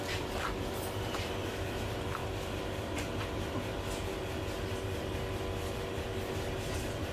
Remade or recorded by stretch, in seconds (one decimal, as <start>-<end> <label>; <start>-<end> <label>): 0.0-2.2 remade; 2.2-5.7 recorded; 5.7-7.1 remade